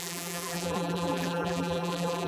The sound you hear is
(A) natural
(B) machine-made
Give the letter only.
B